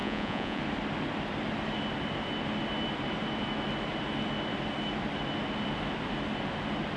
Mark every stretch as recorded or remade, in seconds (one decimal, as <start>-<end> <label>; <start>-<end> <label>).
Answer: 0.0-0.6 remade; 0.6-7.0 recorded